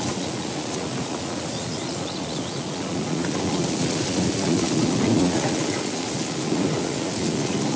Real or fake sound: fake